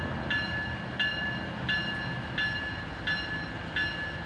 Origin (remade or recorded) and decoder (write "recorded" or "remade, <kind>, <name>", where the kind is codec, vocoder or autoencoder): recorded